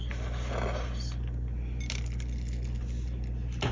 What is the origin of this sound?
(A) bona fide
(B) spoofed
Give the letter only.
A